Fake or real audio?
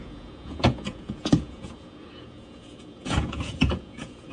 fake